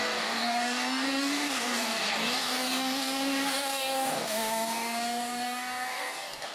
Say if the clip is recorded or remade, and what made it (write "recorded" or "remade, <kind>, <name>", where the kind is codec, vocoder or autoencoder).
remade, codec, DAC